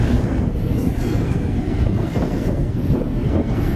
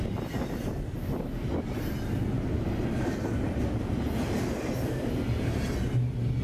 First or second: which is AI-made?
first